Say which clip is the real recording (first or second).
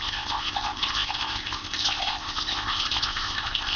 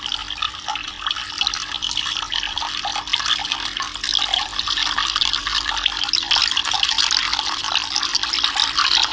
second